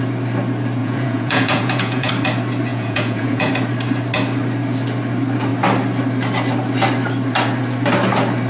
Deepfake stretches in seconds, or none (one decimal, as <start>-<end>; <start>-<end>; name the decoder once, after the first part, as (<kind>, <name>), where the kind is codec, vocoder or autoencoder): 0.8-2.1 (vocoder, Vocos); 2.7-3.5